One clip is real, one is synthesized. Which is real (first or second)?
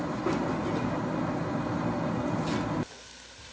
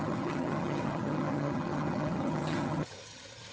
first